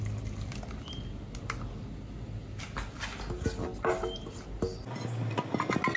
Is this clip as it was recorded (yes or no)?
yes